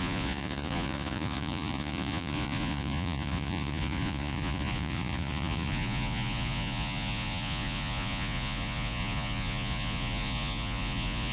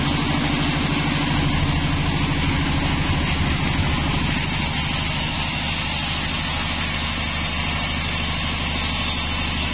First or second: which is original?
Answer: second